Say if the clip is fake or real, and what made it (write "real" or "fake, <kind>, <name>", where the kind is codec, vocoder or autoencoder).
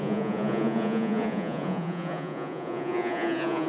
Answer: fake, vocoder, Vocos